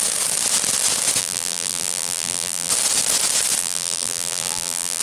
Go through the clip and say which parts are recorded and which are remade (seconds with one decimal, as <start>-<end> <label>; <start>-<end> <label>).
0.0-1.2 recorded; 1.2-2.7 remade; 2.7-3.6 recorded; 3.6-5.0 remade